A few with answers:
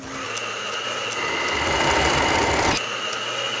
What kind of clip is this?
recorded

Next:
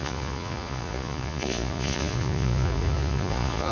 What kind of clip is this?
remade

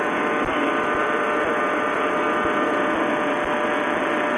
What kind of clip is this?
recorded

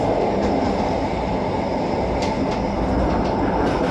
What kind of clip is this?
recorded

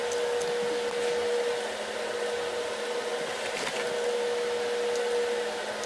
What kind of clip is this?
recorded